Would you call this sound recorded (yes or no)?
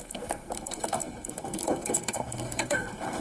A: no